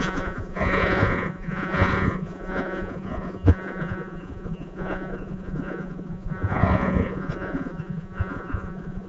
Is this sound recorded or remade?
remade